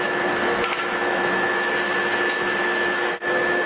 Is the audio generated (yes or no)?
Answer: yes